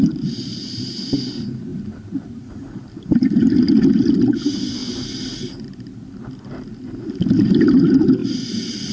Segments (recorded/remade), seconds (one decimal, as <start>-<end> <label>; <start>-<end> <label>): 0.0-8.9 recorded